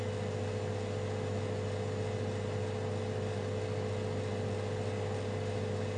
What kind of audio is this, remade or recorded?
recorded